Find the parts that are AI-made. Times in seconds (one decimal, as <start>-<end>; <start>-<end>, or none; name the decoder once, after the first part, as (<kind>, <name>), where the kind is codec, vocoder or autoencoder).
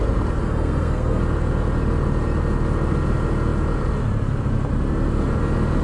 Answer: 0.4-1.2 (codec, SNAC)